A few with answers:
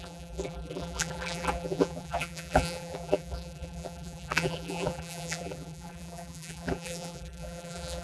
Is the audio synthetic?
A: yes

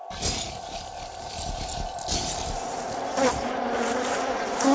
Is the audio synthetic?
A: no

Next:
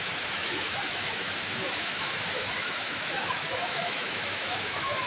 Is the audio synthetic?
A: yes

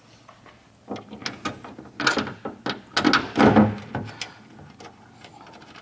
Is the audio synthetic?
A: no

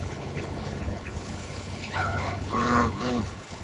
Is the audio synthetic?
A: yes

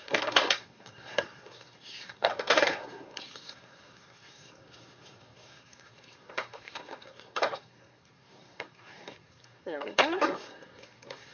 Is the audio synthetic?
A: yes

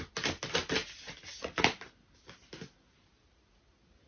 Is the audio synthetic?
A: no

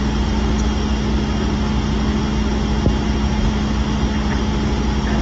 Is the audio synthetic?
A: no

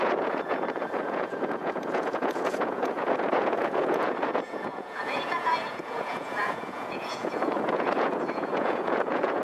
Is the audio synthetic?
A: yes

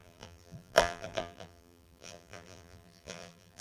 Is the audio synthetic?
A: yes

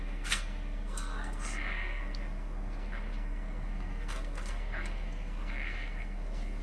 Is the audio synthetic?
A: yes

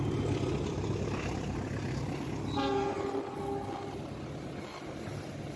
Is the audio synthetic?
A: no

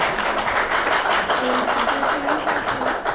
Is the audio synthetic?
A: no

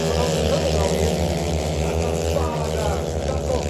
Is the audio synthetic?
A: no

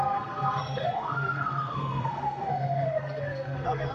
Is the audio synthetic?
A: yes